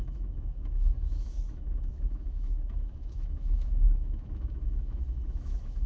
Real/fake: fake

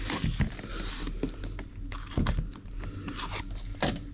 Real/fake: real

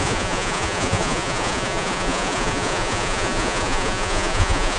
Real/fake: fake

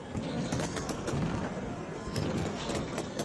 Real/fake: fake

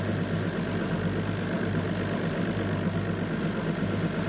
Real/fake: real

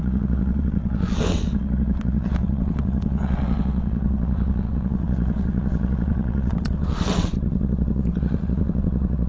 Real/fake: fake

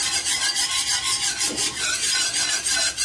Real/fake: real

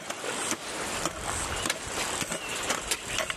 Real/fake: fake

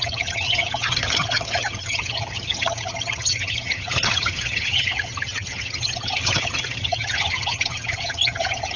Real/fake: fake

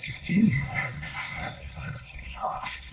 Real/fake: fake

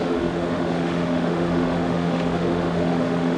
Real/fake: fake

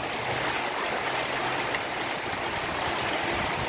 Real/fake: real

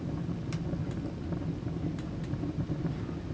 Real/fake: real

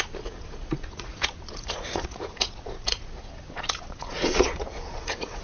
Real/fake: fake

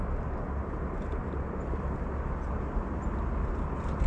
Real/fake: real